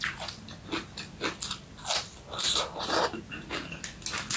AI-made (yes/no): no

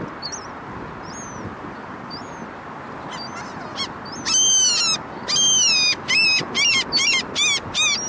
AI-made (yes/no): no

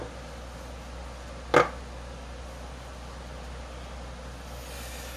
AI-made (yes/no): no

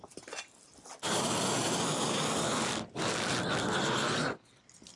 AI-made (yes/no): no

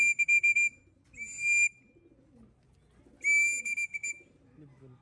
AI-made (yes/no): no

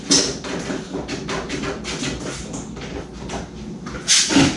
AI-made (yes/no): no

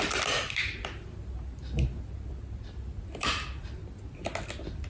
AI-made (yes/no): no